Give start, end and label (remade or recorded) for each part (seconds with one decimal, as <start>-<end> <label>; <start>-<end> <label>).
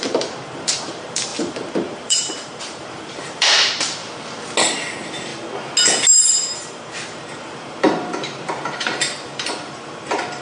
0.0-4.0 remade; 4.0-4.6 recorded; 4.6-5.3 remade; 5.3-6.3 recorded; 6.3-10.4 remade